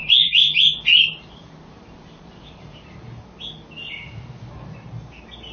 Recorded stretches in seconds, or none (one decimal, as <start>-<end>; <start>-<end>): 3.2-5.5

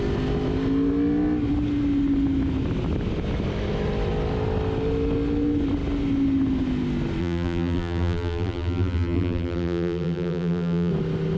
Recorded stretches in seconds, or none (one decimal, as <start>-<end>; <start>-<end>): 0.0-7.2; 10.9-11.4